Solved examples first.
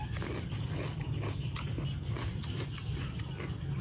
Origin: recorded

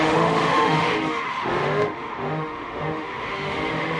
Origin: remade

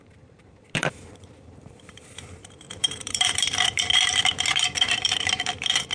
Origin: remade